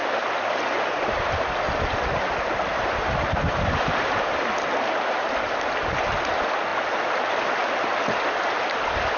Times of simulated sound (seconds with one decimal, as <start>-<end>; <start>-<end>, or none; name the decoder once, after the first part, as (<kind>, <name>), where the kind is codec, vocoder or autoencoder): 2.7-4.4 (vocoder, BigVGAN v2)